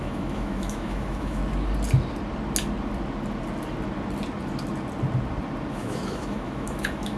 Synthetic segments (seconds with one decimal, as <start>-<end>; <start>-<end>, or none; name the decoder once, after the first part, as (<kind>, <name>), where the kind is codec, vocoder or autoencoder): 0.0-1.4 (autoencoder, DAC-VAE); 5.7-7.2